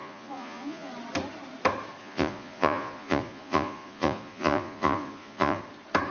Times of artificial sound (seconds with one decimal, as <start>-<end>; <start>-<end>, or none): 0.0-0.9; 2.0-5.6